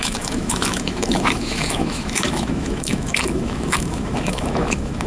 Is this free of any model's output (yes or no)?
no